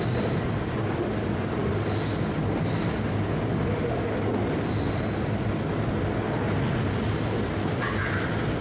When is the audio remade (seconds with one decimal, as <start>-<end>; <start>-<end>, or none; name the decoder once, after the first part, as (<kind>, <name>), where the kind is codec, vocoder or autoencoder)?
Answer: none